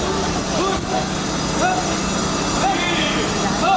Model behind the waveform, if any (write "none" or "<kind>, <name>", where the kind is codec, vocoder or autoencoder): none